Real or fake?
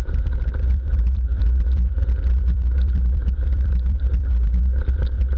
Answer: fake